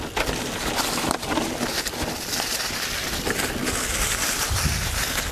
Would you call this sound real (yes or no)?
yes